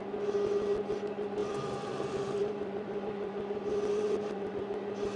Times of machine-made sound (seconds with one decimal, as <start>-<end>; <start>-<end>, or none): 1.4-4.5